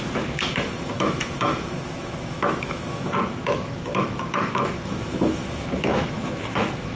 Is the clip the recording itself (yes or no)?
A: no